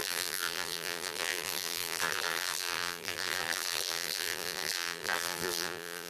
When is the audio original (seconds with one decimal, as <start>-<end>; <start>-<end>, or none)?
none